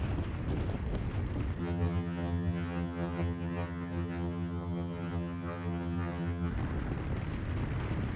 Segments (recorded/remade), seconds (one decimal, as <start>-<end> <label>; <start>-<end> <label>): 0.0-1.6 recorded; 1.6-6.5 remade; 6.5-8.2 recorded